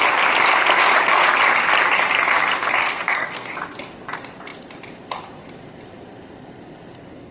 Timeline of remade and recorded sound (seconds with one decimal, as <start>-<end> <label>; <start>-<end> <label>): 0.0-2.8 recorded; 2.8-3.5 remade; 3.5-7.3 recorded